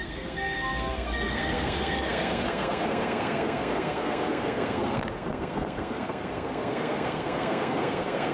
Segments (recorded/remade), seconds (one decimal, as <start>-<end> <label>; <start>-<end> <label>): 0.0-8.3 remade